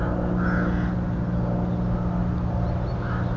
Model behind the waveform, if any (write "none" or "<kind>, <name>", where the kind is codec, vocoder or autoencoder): none